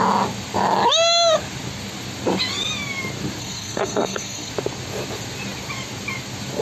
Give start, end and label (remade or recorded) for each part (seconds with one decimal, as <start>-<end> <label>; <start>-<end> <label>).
0.0-3.4 recorded; 3.4-4.5 remade; 4.5-6.6 recorded